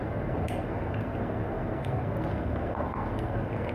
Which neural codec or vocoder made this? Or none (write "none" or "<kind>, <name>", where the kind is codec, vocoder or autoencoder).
codec, SNAC